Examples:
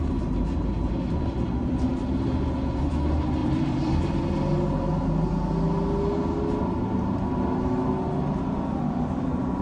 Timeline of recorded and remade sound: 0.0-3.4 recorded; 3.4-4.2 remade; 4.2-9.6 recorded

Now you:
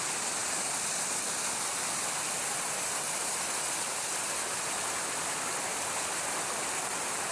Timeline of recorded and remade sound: 0.0-5.7 recorded; 5.7-6.4 remade; 6.4-7.3 recorded

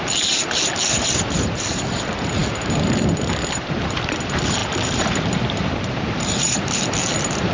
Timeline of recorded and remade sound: 0.0-7.5 remade

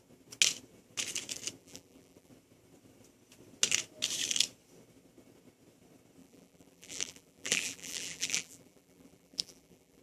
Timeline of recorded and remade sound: 0.0-1.6 recorded; 1.6-2.3 remade; 2.3-6.2 recorded; 6.2-10.0 remade